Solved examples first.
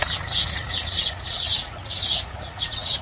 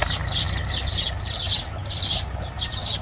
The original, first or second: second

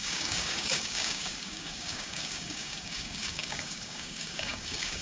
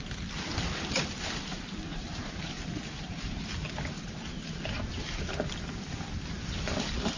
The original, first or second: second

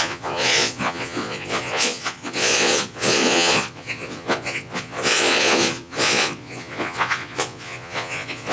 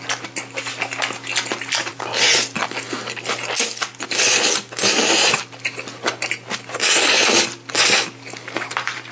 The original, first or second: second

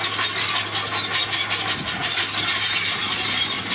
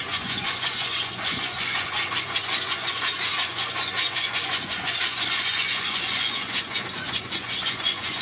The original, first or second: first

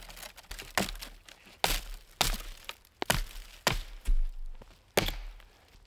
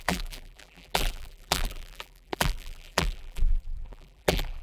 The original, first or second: first